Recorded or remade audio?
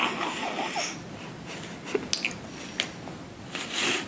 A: recorded